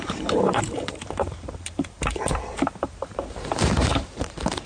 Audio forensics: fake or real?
fake